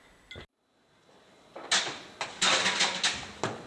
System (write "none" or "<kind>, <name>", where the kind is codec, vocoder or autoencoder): none